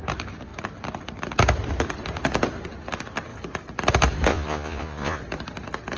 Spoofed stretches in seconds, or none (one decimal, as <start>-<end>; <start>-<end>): 4.3-5.2

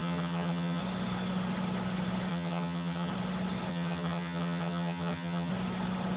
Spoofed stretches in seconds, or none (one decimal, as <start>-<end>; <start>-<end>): 0.0-0.8; 2.3-3.1; 3.7-5.5

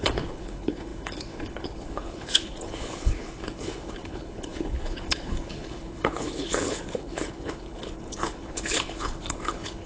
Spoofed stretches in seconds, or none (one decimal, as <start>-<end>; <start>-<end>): 0.0-9.9

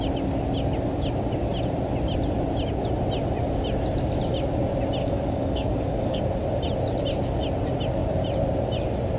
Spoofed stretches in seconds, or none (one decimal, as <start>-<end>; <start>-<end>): 5.0-6.2